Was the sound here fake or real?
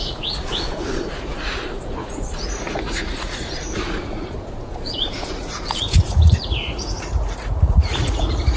fake